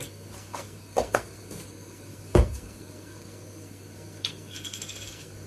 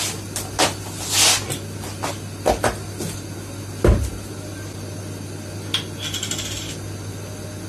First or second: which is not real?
first